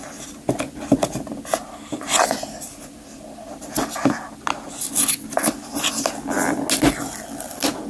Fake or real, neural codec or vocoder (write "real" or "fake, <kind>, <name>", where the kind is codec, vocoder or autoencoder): real